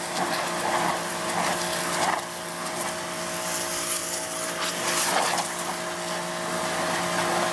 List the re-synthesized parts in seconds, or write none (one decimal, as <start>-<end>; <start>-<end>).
none